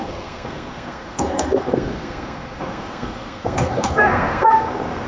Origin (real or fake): fake